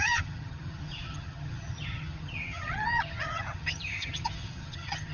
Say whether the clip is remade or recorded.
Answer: remade